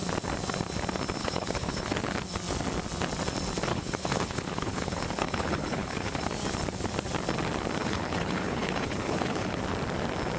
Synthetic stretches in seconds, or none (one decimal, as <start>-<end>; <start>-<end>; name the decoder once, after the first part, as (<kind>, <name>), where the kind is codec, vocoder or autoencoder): 1.2-1.8 (codec, HILCodec); 3.7-6.2; 7.8-9.6